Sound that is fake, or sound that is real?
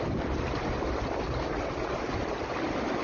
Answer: real